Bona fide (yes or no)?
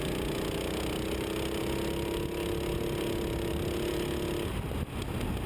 yes